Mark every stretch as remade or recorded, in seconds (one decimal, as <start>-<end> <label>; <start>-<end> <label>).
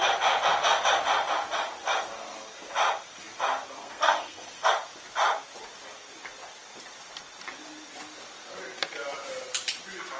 0.0-3.8 recorded; 3.8-4.7 remade; 4.7-10.2 recorded